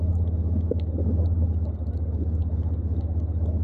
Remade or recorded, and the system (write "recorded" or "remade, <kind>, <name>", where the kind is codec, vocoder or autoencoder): recorded